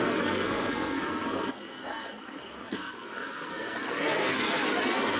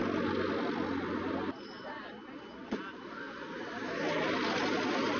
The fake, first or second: first